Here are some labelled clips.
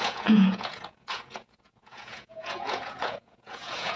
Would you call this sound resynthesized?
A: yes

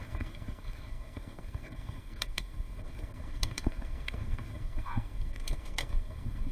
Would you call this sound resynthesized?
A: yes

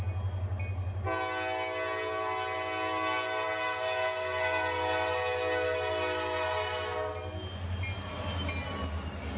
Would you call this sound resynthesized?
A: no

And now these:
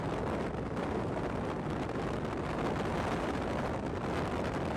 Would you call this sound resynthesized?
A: no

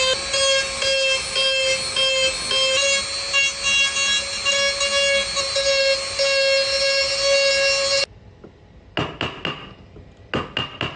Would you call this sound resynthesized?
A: no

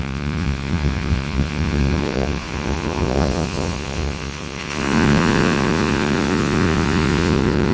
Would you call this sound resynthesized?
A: yes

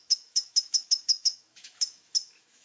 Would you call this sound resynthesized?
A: yes